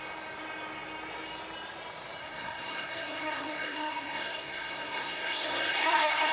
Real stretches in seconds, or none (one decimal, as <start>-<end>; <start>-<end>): 0.0-2.2